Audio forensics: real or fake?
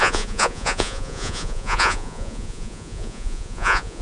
fake